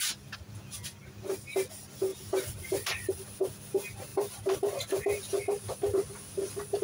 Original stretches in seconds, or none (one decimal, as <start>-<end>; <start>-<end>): 0.0-2.1; 3.1-6.8